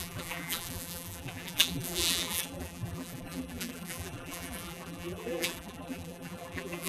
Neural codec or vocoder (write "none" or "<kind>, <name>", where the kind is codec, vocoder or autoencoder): vocoder, BigVGAN v2